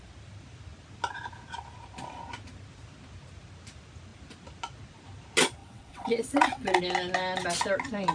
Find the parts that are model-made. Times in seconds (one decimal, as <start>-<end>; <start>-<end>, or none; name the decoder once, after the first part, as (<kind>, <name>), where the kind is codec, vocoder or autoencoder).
5.6-6.8 (vocoder, WaveNeXt)